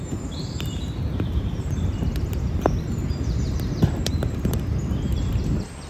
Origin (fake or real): fake